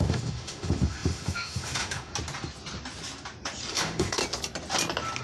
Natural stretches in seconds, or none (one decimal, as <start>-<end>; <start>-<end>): 2.1-3.7; 4.2-5.2